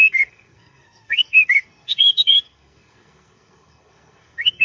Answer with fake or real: fake